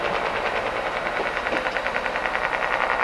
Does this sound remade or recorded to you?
recorded